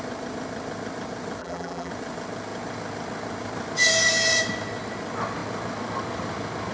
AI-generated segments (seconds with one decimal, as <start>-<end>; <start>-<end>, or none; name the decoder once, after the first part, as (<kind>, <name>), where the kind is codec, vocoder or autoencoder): 1.4-1.9 (vocoder, BigVGAN v2)